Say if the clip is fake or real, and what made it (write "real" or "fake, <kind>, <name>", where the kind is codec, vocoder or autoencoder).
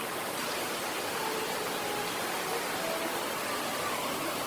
real